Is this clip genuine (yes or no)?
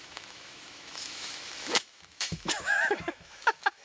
no